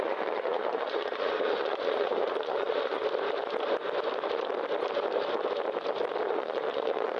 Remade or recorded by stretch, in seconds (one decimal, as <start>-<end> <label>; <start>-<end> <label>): 0.0-3.0 remade; 3.0-6.3 recorded; 6.3-7.2 remade